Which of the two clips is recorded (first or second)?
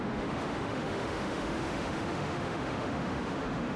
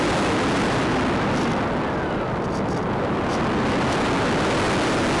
second